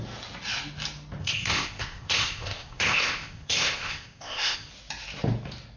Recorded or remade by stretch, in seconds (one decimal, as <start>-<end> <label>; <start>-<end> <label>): 0.0-1.2 recorded; 1.2-4.7 remade; 4.7-5.8 recorded